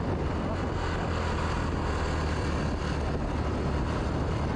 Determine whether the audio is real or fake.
real